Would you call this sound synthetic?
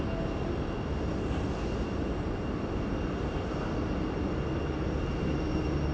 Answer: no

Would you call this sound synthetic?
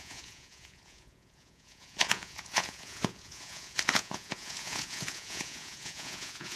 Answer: yes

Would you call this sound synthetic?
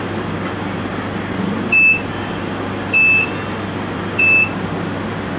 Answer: no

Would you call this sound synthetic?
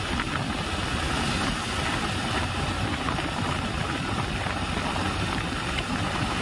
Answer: no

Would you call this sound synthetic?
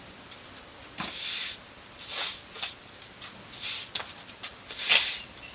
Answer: no